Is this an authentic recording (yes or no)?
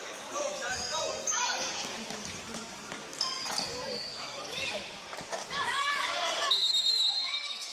no